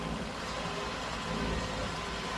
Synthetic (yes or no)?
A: no